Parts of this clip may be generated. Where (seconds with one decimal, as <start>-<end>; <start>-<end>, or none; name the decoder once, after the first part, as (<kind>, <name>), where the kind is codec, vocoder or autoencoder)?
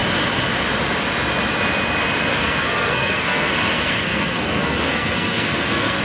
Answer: 2.3-6.0 (codec, SNAC)